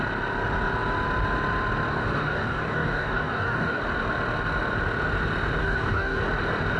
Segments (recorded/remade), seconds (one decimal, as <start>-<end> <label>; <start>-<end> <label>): 0.0-1.9 recorded; 1.9-3.8 remade; 3.8-5.6 recorded; 5.6-6.2 remade; 6.2-6.8 recorded

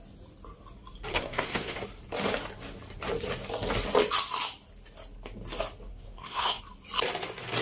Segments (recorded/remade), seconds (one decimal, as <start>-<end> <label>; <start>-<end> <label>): 0.0-1.1 recorded; 1.1-1.8 remade; 1.8-5.9 recorded; 5.9-6.6 remade; 6.6-7.6 recorded

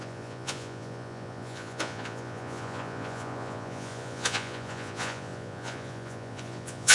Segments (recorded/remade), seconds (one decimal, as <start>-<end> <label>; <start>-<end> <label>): 0.0-6.9 remade

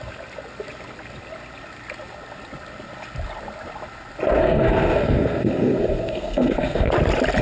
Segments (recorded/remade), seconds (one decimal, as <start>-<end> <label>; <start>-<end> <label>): 0.0-4.4 recorded; 4.4-6.9 remade; 6.9-7.4 recorded

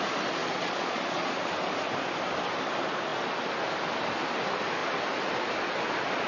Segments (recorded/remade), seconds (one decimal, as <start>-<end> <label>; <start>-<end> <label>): 0.0-0.4 recorded; 0.4-1.5 remade; 1.5-6.3 recorded

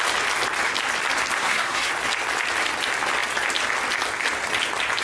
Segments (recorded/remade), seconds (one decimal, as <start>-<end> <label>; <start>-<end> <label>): 0.0-1.4 recorded; 1.4-1.9 remade; 1.9-5.0 recorded

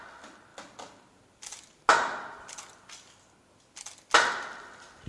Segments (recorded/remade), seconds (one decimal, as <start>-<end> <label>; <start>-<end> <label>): 0.0-5.1 recorded

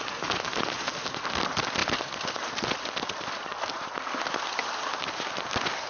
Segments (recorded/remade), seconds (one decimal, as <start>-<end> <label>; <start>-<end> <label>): 0.0-1.8 recorded; 1.8-4.7 remade; 4.7-5.9 recorded